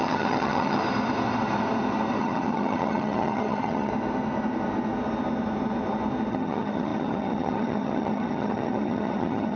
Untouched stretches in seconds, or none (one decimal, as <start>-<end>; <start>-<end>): 0.8-2.2; 3.9-6.3